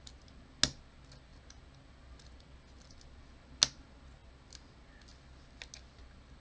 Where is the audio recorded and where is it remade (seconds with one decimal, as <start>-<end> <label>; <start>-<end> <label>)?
0.0-6.4 recorded